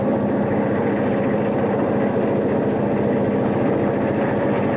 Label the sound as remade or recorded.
recorded